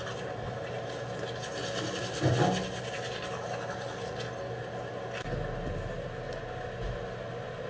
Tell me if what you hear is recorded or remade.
recorded